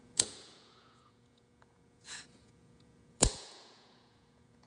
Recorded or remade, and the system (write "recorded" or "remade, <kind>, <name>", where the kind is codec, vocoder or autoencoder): remade, vocoder, Vocos